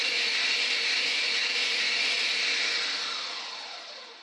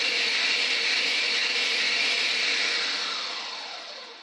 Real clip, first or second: first